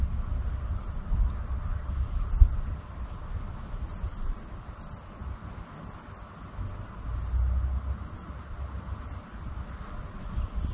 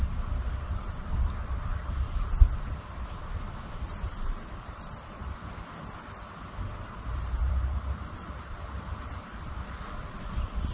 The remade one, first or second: second